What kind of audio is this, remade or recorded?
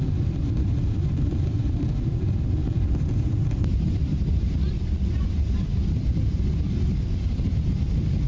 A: remade